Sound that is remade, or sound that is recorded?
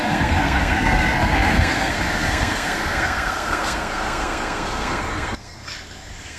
remade